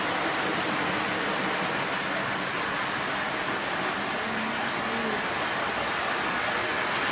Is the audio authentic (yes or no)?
yes